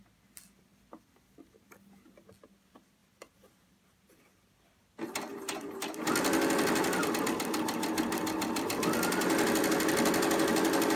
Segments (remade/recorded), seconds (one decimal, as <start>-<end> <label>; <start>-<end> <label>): 0.0-11.0 recorded